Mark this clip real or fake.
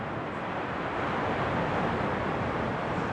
real